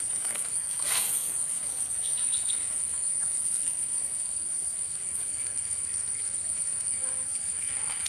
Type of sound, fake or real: fake